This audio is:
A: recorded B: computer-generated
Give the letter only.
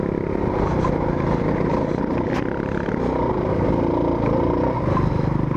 A